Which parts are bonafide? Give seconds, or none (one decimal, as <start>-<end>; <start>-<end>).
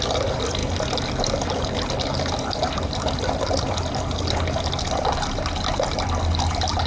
0.0-6.9